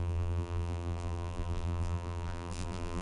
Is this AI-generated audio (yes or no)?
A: yes